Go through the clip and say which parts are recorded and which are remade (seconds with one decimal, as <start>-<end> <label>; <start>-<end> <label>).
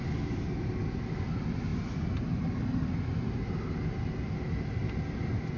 0.0-5.6 recorded